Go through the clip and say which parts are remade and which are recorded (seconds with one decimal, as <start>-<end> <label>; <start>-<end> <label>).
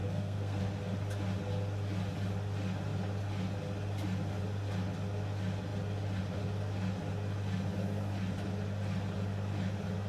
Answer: 0.0-0.6 remade; 0.6-10.1 recorded